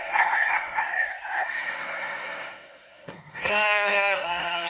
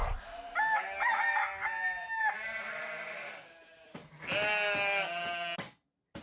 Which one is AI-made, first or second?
first